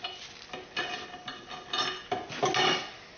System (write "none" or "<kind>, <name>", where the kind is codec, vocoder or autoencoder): none